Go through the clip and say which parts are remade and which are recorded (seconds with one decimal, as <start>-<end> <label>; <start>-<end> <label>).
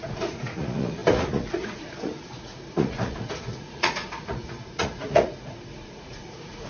0.0-6.7 remade